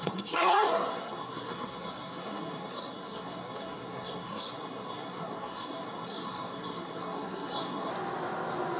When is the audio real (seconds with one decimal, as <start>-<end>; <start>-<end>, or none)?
7.9-8.8